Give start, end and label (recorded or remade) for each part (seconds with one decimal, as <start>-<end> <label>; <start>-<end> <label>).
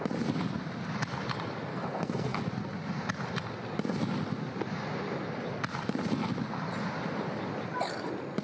0.0-1.7 recorded; 1.7-2.4 remade; 2.4-8.4 recorded